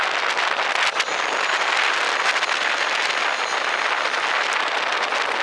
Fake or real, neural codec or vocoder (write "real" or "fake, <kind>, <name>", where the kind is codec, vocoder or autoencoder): real